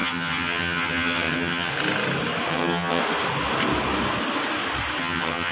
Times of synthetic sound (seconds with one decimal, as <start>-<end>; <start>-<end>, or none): 0.0-1.7; 2.5-3.0; 5.0-5.5